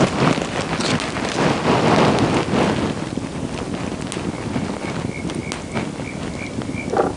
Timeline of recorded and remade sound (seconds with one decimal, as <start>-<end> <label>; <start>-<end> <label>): 0.0-7.2 recorded